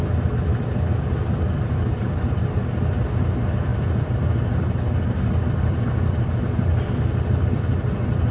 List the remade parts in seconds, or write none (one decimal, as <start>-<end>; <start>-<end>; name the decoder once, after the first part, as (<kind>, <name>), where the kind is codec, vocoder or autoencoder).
none